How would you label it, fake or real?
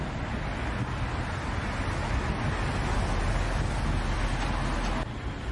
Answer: real